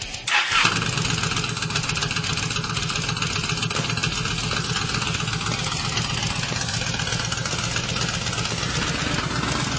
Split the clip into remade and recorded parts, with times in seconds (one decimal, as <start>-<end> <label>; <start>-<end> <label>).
0.0-9.8 recorded